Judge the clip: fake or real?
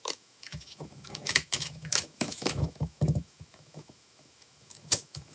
fake